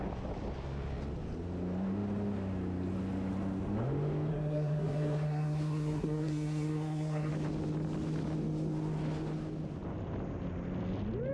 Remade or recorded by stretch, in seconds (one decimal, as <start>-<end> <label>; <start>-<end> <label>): 0.0-4.3 recorded; 4.3-7.3 remade; 7.3-11.3 recorded